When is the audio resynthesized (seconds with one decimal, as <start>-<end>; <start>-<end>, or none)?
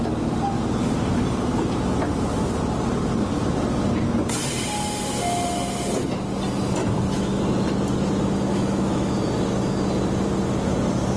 6.8-7.4; 8.5-9.1